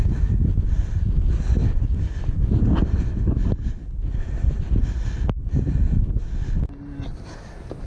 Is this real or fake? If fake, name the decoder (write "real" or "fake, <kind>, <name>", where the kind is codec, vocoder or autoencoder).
real